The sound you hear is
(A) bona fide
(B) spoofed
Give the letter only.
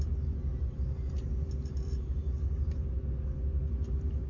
A